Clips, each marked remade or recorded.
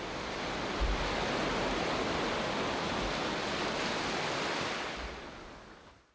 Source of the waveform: recorded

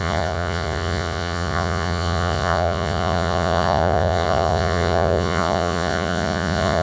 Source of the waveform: remade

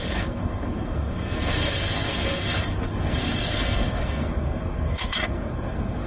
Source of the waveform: remade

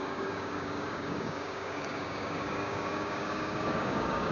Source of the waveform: remade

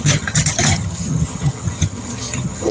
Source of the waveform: remade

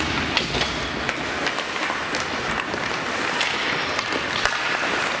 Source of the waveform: recorded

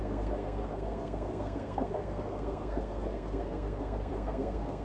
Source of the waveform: remade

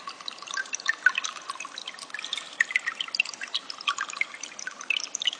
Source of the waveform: recorded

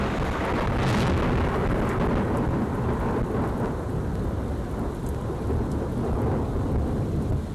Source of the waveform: recorded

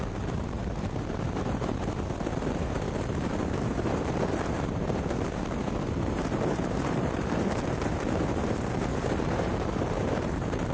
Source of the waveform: remade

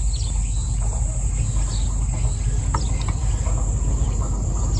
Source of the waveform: recorded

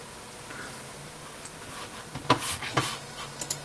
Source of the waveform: recorded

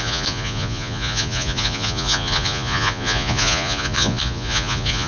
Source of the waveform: remade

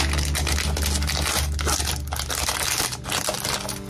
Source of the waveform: recorded